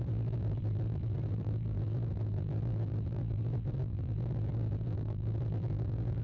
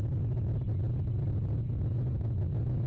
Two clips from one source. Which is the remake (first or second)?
first